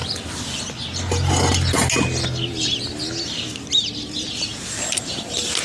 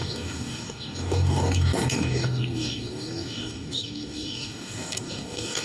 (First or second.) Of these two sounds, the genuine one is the first